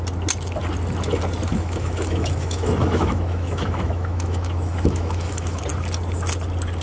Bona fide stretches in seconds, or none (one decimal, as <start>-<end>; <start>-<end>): 0.0-1.5; 5.6-6.8